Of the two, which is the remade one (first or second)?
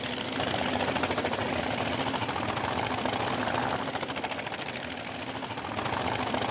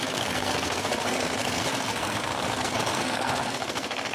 second